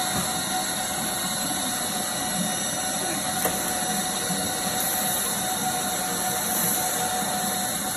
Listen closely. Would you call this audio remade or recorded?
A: recorded